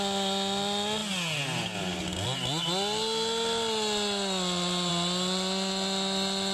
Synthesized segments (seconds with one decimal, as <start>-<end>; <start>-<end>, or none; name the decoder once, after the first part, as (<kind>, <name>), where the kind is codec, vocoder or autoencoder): none